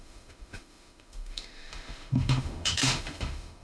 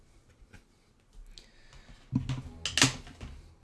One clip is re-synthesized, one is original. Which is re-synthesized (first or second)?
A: first